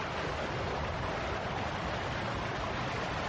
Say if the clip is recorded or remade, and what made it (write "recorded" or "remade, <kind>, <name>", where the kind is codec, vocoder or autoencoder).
recorded